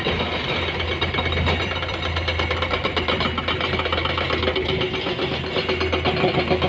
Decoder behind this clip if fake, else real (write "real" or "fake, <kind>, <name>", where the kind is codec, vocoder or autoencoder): real